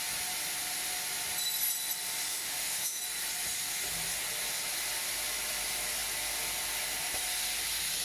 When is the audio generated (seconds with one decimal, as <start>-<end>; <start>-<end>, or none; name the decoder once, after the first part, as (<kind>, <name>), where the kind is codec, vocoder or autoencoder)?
2.3-3.0 (autoencoder, DAC-VAE)